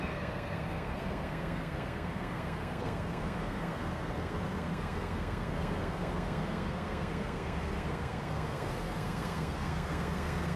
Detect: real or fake fake